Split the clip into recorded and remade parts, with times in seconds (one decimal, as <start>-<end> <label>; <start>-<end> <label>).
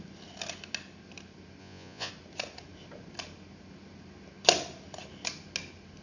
0.0-1.6 recorded; 1.6-2.1 remade; 2.1-6.0 recorded